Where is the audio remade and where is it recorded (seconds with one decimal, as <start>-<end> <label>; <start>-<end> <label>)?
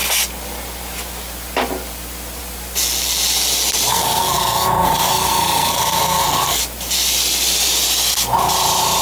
0.0-3.9 recorded; 3.9-6.6 remade; 6.6-9.0 recorded